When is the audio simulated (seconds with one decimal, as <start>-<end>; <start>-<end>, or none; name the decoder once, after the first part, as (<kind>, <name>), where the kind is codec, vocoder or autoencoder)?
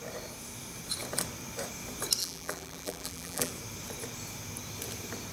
2.2-3.5 (vocoder, BigVGAN v2)